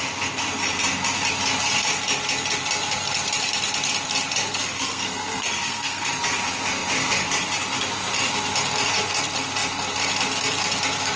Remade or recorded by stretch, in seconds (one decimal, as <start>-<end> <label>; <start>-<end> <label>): 0.0-4.4 recorded; 4.4-6.1 remade; 6.1-11.2 recorded